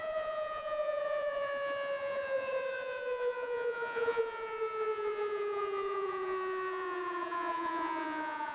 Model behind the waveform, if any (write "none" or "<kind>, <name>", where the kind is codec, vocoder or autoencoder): vocoder, Vocos